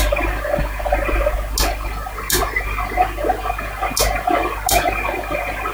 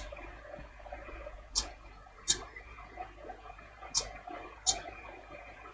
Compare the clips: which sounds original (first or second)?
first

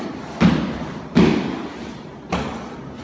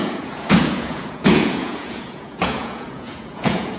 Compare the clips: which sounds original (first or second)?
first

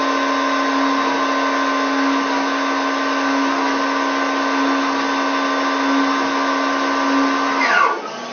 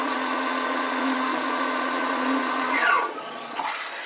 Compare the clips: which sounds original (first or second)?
first